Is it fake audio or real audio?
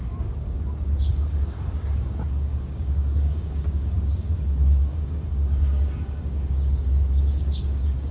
fake